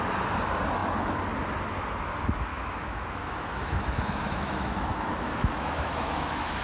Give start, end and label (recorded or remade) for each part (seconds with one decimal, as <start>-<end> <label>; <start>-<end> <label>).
0.0-2.5 recorded; 2.5-6.6 remade